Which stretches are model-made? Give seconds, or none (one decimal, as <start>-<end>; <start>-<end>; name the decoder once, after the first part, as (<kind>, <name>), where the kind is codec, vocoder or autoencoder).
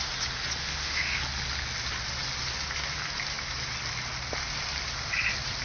0.6-1.2 (autoencoder, DAC-VAE)